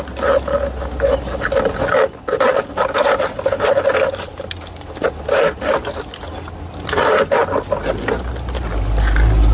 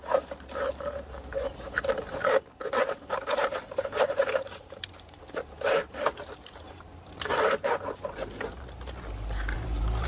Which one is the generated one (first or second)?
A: second